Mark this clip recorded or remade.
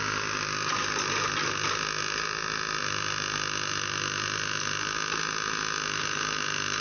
recorded